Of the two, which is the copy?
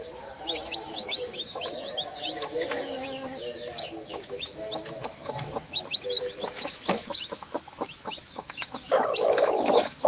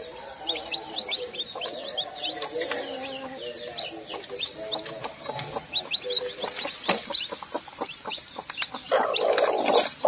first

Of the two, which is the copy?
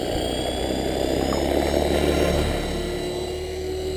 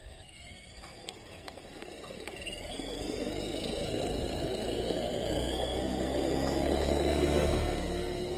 second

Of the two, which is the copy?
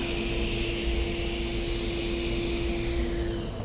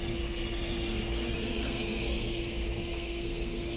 second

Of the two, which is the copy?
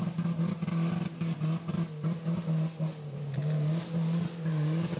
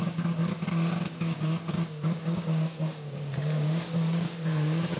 second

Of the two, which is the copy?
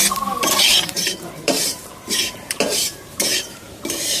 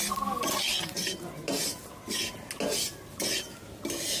first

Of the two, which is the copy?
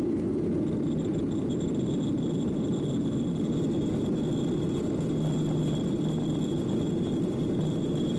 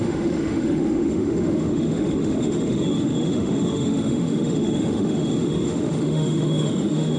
second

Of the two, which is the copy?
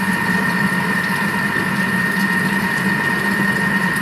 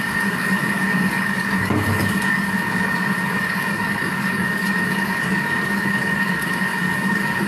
second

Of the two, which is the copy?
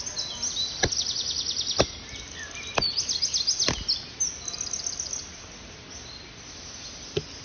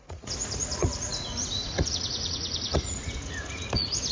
second